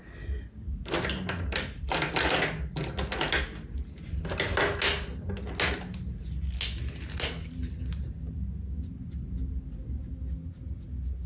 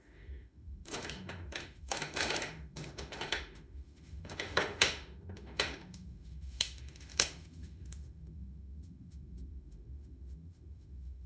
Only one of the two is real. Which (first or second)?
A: first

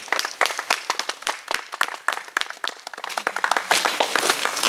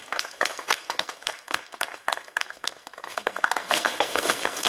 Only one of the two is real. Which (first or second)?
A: first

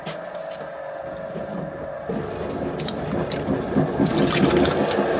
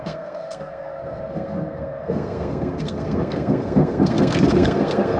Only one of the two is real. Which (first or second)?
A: first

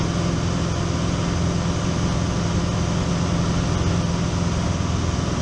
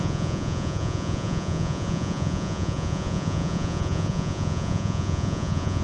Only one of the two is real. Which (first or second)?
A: first